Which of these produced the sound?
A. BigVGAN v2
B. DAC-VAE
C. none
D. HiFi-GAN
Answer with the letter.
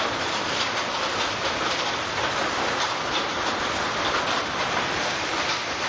C